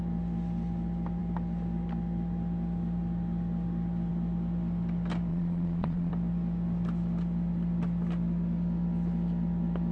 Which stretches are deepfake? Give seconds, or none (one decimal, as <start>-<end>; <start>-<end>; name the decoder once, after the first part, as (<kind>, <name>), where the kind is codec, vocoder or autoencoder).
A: 5.3-6.1 (vocoder, Vocos)